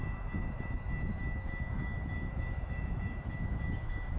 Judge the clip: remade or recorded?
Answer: remade